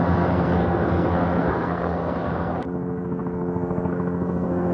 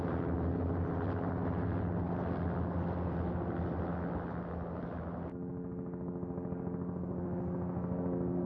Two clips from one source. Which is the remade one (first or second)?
first